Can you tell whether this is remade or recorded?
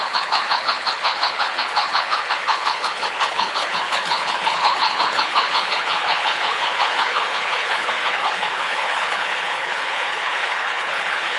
remade